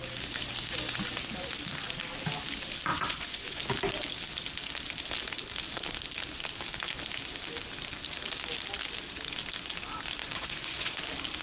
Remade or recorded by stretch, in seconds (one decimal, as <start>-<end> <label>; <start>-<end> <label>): 0.0-2.9 recorded; 2.9-3.6 remade; 3.6-10.2 recorded; 10.2-11.0 remade; 11.0-11.4 recorded